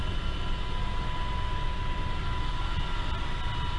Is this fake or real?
real